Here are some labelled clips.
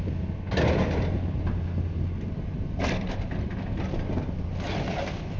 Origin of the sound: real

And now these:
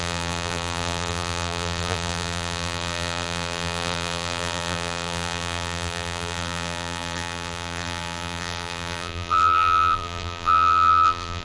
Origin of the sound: fake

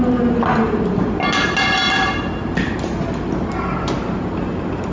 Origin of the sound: real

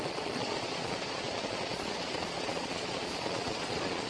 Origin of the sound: fake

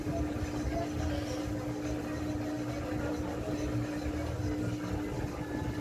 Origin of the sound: real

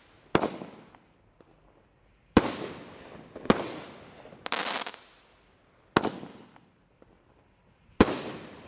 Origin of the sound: real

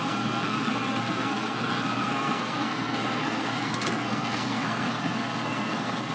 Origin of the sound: fake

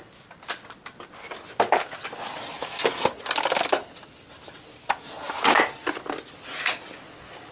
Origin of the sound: real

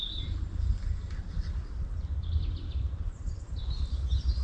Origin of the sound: real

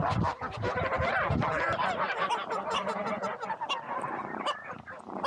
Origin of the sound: real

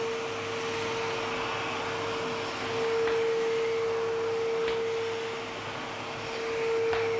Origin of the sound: real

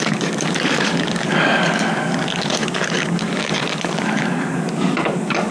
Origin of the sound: fake